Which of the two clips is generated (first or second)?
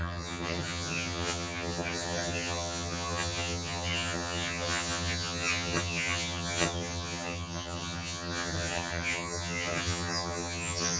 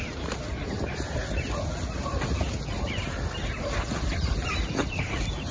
first